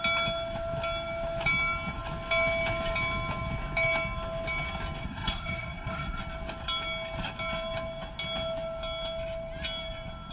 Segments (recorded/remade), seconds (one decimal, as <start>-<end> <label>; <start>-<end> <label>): 0.0-5.0 recorded; 5.0-6.2 remade; 6.2-10.3 recorded